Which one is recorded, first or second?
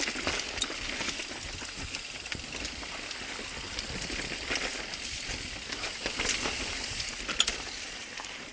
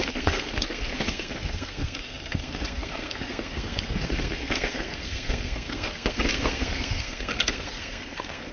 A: first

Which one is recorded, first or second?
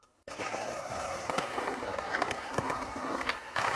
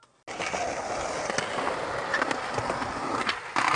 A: second